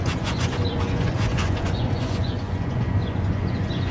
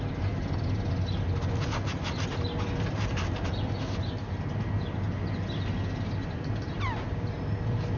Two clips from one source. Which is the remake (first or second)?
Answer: first